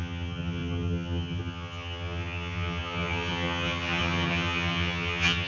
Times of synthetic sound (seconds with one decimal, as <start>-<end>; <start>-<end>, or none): 0.0-5.5